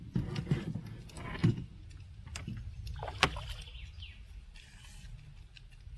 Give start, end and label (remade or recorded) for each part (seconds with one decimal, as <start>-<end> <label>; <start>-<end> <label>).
0.0-6.0 recorded